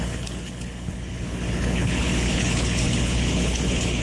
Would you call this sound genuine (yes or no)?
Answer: no